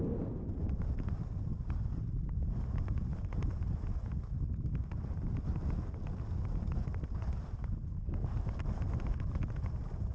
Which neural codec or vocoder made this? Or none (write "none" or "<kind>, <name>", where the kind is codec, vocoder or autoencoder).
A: none